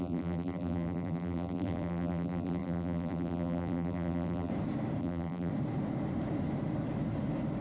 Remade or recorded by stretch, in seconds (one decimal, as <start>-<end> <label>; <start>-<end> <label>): 0.0-4.5 remade; 4.5-5.0 recorded; 5.0-5.5 remade; 5.5-7.6 recorded

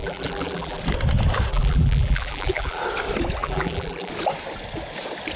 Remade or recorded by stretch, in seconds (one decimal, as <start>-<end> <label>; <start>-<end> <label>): 0.0-0.8 remade; 0.8-1.5 recorded; 1.5-2.8 remade; 2.8-3.4 recorded; 3.4-4.1 remade; 4.1-5.4 recorded

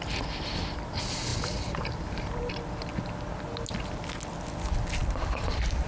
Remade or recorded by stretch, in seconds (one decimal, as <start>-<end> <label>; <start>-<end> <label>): 0.0-1.3 recorded; 1.3-2.5 remade; 2.5-5.0 recorded; 5.0-5.9 remade

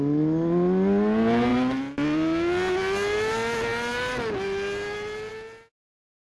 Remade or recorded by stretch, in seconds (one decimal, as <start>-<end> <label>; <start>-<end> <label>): 0.0-6.3 recorded

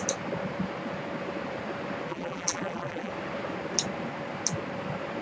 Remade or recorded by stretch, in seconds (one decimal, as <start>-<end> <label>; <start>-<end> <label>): 0.0-2.1 recorded; 2.1-3.1 remade; 3.1-5.2 recorded

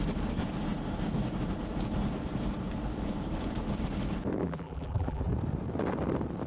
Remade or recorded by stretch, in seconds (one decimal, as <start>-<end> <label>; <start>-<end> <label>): 0.0-4.4 recorded; 4.4-5.2 remade; 5.2-6.5 recorded

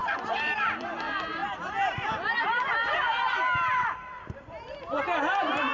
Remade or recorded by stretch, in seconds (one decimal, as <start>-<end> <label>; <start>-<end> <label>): 0.0-5.7 remade

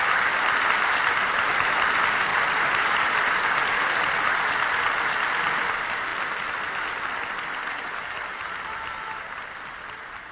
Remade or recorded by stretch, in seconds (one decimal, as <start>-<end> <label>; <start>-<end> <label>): 0.0-2.3 recorded; 2.3-3.2 remade; 3.2-10.3 recorded